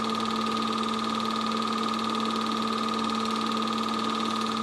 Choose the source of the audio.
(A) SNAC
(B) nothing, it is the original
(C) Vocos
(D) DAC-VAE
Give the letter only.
B